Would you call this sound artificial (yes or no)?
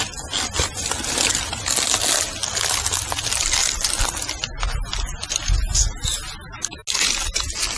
no